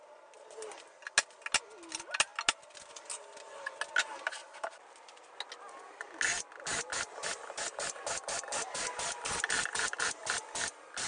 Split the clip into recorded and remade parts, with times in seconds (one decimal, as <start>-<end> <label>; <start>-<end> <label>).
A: 0.0-11.1 recorded